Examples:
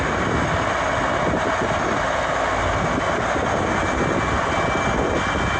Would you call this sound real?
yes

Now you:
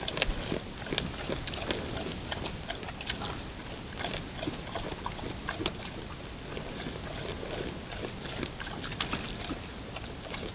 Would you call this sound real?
yes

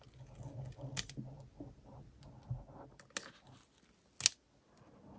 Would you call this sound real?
yes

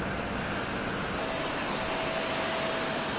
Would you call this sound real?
yes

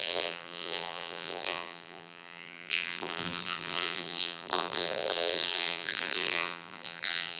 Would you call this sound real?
no